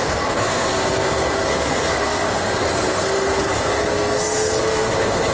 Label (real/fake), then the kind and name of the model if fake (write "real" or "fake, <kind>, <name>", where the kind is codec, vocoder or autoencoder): fake, codec, SNAC